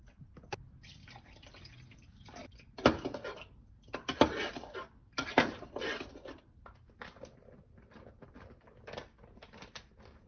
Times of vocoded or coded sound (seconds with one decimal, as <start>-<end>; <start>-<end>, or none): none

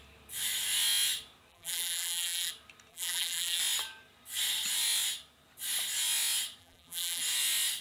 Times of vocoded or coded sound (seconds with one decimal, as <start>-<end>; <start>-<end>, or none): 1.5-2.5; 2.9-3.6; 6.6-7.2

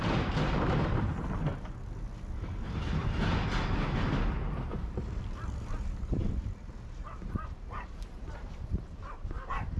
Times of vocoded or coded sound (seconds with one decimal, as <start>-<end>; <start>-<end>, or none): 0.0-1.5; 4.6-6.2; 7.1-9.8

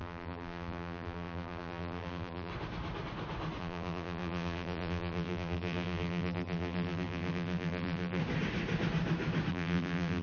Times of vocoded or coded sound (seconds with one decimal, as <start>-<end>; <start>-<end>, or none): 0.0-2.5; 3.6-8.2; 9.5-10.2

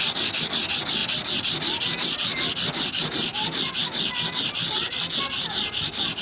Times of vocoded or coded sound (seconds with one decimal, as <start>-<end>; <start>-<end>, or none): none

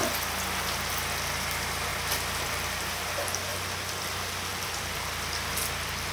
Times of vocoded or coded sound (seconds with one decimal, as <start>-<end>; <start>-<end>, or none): 1.9-2.9; 3.5-6.1